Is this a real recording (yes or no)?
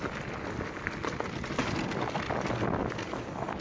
yes